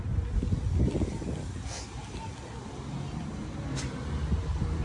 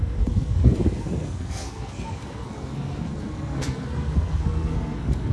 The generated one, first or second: second